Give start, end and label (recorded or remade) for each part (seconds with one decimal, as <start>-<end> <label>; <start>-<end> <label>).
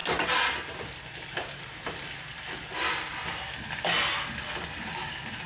0.0-5.5 recorded